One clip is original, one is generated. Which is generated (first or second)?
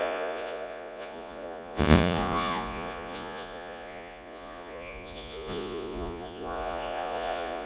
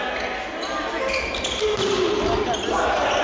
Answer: first